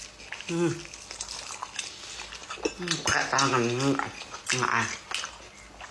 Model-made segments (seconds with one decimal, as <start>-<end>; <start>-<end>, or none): none